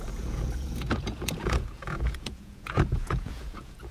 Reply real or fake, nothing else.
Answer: fake